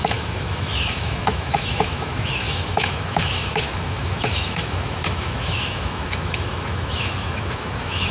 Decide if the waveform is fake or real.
fake